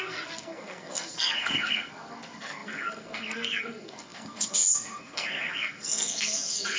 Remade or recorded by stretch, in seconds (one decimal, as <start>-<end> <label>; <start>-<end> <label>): 0.0-6.8 remade